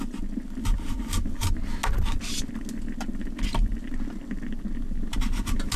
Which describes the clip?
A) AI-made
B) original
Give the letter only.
B